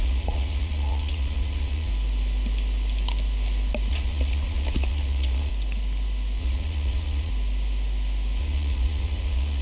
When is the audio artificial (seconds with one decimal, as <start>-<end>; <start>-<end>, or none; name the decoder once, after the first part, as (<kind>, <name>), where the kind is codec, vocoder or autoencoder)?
0.0-1.9 (vocoder, Vocos); 3.9-5.5; 6.4-7.3; 8.4-9.6